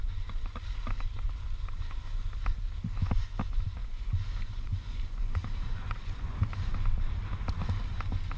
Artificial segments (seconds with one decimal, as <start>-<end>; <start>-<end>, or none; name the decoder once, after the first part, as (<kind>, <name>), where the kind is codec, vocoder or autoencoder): 3.8-6.5 (vocoder, Vocos)